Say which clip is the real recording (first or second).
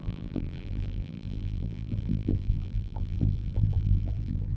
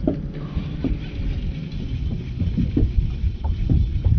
second